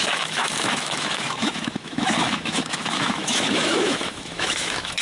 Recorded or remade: remade